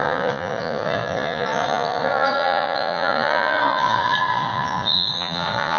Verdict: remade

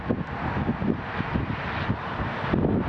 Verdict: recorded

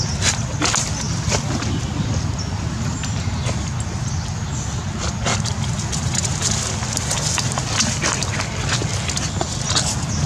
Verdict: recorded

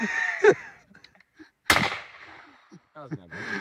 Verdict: recorded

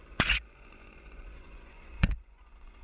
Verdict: remade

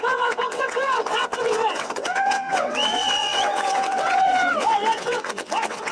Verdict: remade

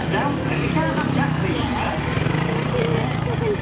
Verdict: recorded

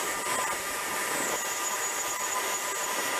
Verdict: recorded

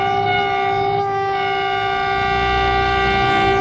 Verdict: recorded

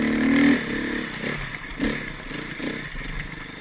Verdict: recorded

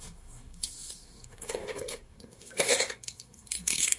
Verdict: remade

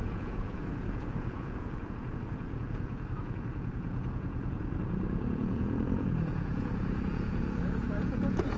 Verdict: remade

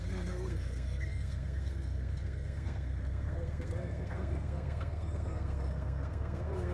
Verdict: remade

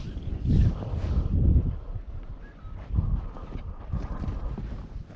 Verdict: remade